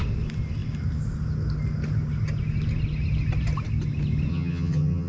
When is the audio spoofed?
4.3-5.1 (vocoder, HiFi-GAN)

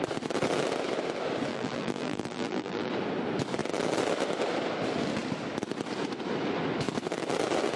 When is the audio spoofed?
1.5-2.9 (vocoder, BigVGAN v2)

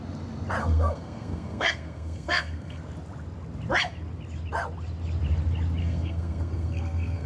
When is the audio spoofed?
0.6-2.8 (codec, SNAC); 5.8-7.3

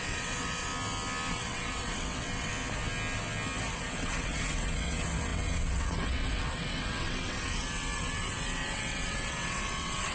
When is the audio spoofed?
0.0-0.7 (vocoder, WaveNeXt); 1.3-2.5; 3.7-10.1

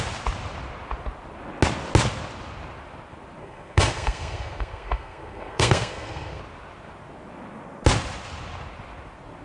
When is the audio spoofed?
3.4-6.4 (codec, SNAC)